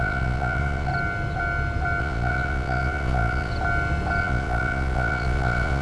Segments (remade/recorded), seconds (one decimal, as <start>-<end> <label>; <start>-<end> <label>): 0.0-0.9 remade; 0.9-2.0 recorded; 2.0-3.5 remade; 3.5-4.2 recorded; 4.2-5.8 remade